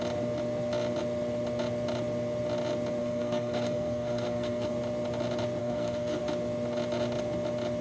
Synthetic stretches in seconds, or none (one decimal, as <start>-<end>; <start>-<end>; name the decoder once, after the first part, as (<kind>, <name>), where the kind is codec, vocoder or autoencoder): 3.0-4.7 (codec, SNAC); 5.6-6.2